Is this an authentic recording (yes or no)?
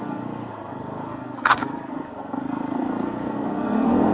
no